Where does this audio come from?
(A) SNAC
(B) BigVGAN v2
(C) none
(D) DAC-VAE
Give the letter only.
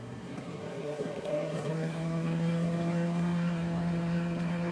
A